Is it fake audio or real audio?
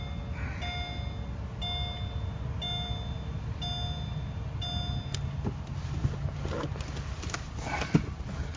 real